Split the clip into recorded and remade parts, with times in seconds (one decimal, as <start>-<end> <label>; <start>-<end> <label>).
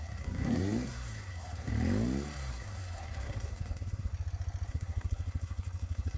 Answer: 0.0-1.7 remade; 1.7-2.5 recorded; 2.5-4.1 remade; 4.1-4.7 recorded; 4.7-6.2 remade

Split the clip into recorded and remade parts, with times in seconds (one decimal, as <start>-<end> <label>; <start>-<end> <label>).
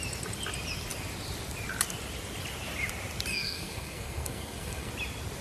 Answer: 0.0-3.3 recorded; 3.3-4.9 remade; 4.9-5.4 recorded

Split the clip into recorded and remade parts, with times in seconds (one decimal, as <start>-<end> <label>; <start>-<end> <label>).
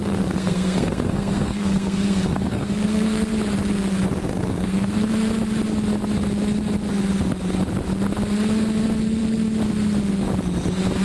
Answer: 0.0-3.3 remade; 3.3-4.3 recorded; 4.3-5.1 remade; 5.1-11.0 recorded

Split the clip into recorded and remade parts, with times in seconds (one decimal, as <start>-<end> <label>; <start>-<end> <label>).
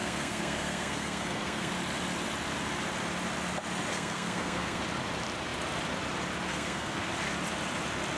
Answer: 0.0-1.7 remade; 1.7-3.9 recorded; 3.9-4.8 remade; 4.8-6.5 recorded; 6.5-7.1 remade; 7.1-8.2 recorded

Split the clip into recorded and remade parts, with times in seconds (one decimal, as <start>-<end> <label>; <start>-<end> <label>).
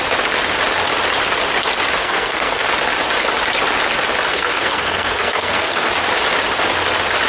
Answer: 0.0-2.0 recorded; 2.0-2.7 remade; 2.7-4.3 recorded; 4.3-5.9 remade; 5.9-7.3 recorded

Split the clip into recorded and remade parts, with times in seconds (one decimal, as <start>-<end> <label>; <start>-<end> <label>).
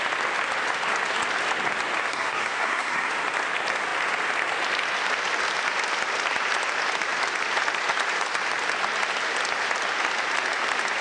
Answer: 0.0-2.1 recorded; 2.1-3.1 remade; 3.1-11.0 recorded